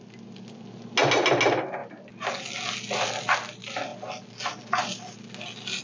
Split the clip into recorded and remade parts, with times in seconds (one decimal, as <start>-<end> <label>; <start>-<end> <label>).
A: 0.0-5.8 recorded